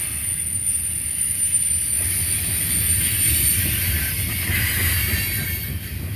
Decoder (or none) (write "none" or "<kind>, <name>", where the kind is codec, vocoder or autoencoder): none